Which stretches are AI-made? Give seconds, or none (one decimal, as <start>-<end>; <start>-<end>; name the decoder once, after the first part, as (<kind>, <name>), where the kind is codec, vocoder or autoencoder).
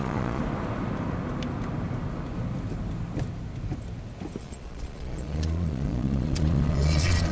0.0-0.4 (vocoder, Vocos); 4.4-7.3